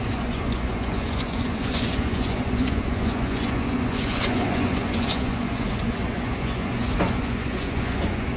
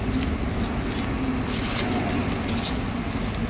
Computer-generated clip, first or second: first